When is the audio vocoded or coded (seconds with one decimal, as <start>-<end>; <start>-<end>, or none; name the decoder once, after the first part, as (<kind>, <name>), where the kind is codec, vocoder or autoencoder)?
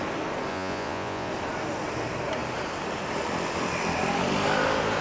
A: 0.5-1.3 (vocoder, Vocos)